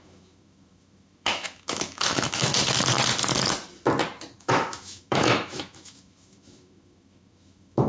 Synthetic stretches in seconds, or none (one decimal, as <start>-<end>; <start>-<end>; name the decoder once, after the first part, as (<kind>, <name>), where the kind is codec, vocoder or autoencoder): 0.0-2.5 (autoencoder, DAC-VAE); 4.4-7.9